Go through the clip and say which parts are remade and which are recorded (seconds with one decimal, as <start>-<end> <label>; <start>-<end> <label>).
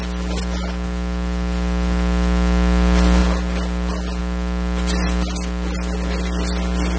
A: 0.0-7.0 recorded